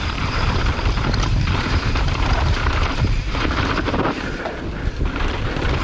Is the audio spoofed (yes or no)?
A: yes